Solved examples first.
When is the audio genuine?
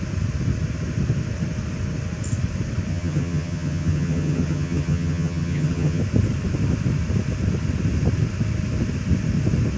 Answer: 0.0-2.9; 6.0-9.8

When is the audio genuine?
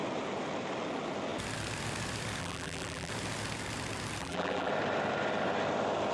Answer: 0.0-2.4; 3.1-4.2; 4.7-6.1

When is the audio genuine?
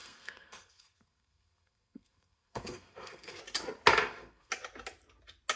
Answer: 3.4-3.9; 4.5-5.6